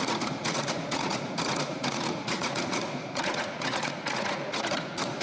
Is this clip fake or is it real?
fake